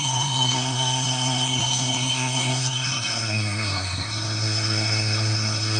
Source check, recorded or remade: remade